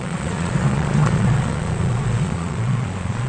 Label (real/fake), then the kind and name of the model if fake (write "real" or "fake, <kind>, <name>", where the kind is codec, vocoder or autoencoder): fake, vocoder, Vocos